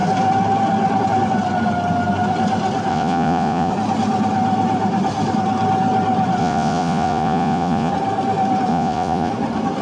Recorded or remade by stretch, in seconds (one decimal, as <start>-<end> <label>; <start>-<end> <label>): 0.0-2.9 recorded; 2.9-3.7 remade; 3.7-6.4 recorded; 6.4-7.9 remade; 7.9-8.7 recorded; 8.7-9.3 remade; 9.3-9.8 recorded